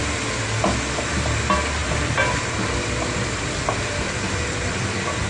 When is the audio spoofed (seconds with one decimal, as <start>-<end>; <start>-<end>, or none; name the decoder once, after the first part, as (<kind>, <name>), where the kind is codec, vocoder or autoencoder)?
1.8-5.3 (vocoder, BigVGAN v2)